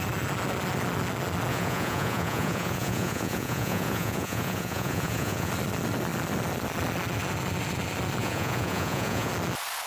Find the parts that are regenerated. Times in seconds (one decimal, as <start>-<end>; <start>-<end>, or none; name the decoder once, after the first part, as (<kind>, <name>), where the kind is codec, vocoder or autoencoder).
1.5-5.5 (vocoder, Vocos); 8.2-9.3